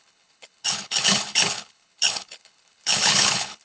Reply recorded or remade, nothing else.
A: remade